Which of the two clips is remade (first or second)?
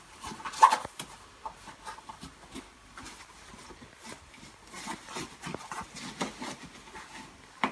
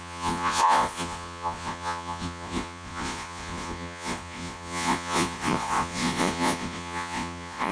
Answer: second